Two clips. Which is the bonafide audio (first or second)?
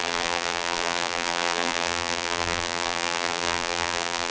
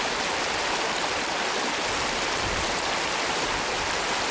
second